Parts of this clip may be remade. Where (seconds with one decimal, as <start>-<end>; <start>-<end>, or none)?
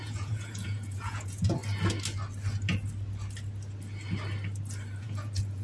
0.0-1.6; 5.0-5.6